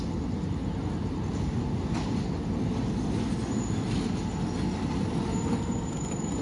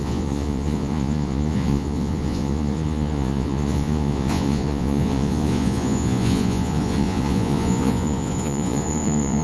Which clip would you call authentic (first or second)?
first